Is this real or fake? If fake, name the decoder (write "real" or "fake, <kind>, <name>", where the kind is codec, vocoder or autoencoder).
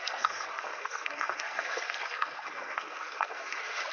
fake, codec, SNAC